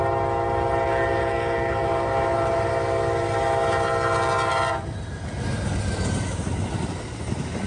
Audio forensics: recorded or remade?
recorded